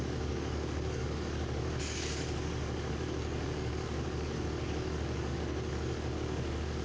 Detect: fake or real fake